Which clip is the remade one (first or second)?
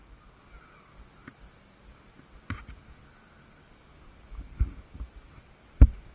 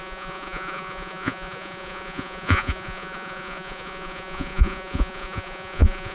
second